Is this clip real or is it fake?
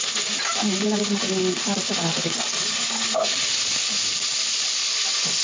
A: real